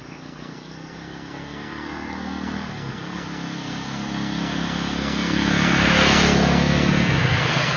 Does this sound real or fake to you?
fake